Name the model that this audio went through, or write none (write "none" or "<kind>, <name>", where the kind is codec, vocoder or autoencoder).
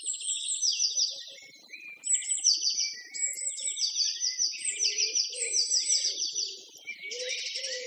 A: none